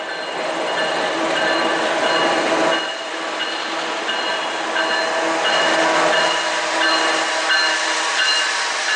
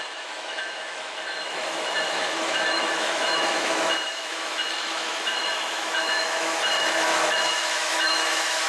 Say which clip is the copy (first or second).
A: second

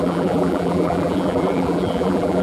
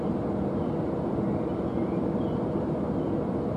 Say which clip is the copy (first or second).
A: first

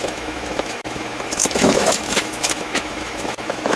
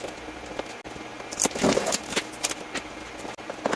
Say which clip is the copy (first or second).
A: first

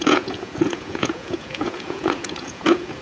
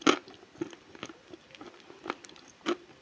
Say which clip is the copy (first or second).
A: first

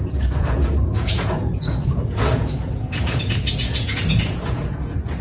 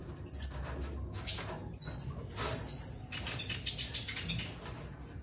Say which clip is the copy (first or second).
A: first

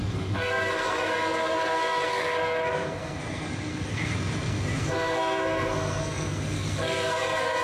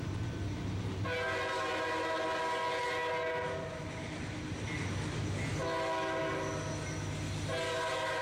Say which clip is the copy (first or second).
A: first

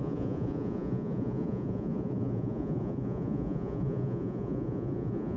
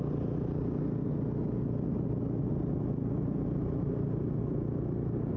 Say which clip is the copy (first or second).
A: first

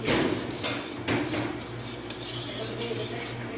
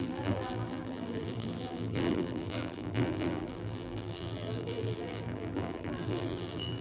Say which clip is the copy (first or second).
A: second